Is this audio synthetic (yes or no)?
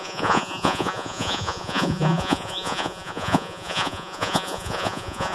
yes